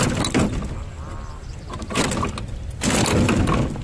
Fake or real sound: real